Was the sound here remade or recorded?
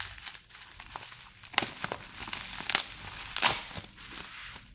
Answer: recorded